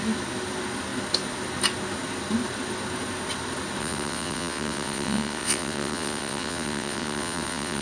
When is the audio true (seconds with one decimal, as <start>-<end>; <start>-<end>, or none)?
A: 0.0-3.8